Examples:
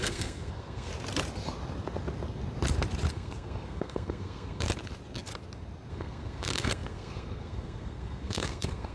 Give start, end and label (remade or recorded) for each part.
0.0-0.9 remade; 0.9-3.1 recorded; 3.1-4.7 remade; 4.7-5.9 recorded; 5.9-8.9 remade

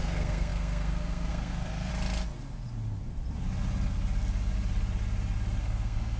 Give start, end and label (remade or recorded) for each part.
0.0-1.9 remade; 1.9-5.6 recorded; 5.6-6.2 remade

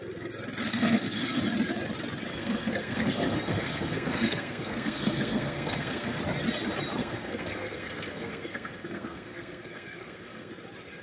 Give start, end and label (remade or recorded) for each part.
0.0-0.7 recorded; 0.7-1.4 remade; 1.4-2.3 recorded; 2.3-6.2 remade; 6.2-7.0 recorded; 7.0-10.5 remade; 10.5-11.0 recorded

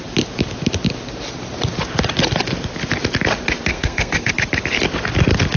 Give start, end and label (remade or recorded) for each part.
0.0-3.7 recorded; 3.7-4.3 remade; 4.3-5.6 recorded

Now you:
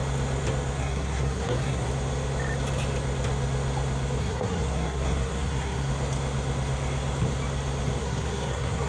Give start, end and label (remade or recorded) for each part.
0.0-0.8 recorded; 0.8-1.9 remade; 1.9-4.2 recorded; 4.2-5.9 remade; 5.9-8.0 recorded; 8.0-8.9 remade

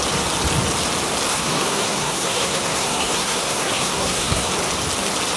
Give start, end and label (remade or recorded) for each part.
0.0-1.3 recorded; 1.3-4.5 remade; 4.5-5.4 recorded